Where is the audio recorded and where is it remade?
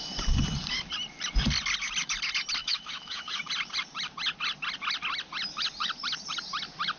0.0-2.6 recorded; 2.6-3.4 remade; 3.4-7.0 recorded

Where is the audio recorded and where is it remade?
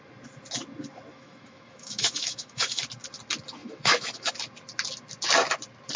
0.0-1.1 recorded; 1.1-2.8 remade; 2.8-3.6 recorded; 3.6-4.3 remade; 4.3-6.0 recorded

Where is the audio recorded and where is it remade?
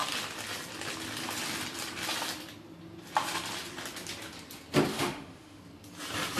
0.0-4.9 recorded; 4.9-5.6 remade; 5.6-6.4 recorded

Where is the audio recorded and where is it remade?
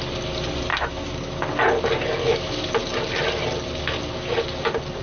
0.0-0.7 recorded; 0.7-1.4 remade; 1.4-2.2 recorded; 2.2-2.7 remade; 2.7-5.0 recorded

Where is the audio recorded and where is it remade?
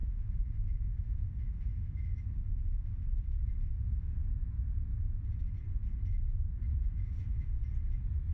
0.0-3.0 remade; 3.0-3.7 recorded; 3.7-4.2 remade; 4.2-6.8 recorded; 6.8-7.6 remade; 7.6-8.3 recorded